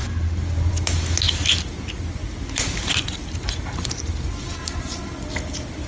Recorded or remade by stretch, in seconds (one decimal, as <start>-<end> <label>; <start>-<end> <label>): 0.0-5.9 recorded